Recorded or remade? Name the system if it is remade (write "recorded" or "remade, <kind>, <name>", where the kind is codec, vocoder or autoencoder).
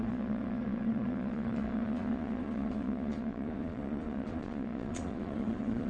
remade, vocoder, Vocos